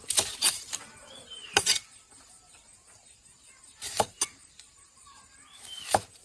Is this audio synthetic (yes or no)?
yes